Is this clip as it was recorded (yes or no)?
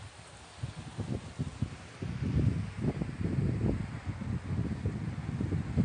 yes